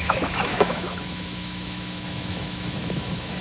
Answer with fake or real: fake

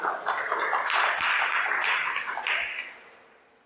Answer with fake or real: real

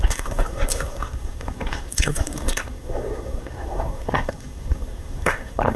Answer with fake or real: fake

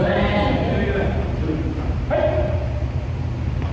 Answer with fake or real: real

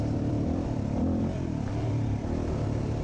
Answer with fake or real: fake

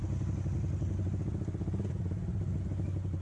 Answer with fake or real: real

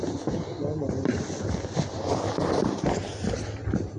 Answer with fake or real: real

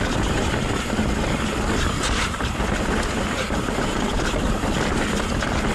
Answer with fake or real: real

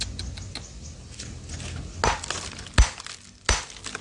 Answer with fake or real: real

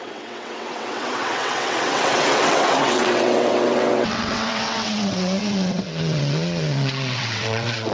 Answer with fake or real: fake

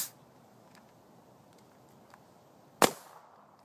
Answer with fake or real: real